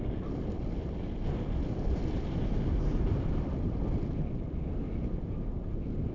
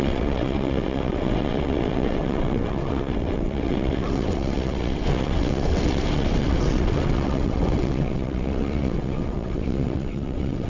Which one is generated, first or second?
second